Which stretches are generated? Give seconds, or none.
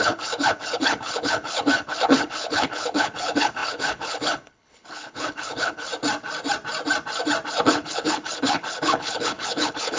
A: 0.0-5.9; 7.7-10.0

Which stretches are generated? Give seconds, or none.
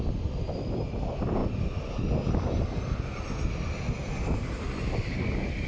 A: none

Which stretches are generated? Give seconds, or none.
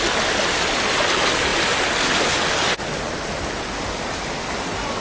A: none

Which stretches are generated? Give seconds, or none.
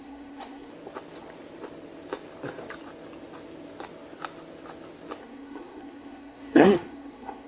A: 0.0-0.7; 5.2-7.5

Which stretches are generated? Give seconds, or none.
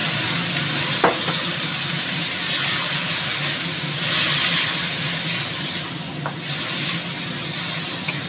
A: none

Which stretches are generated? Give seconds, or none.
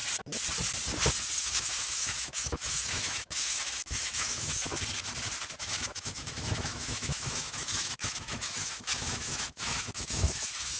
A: 1.4-4.7; 5.6-10.8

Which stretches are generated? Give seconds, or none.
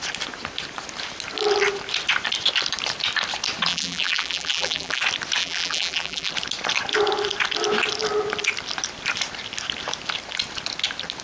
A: 3.7-5.0; 5.4-6.3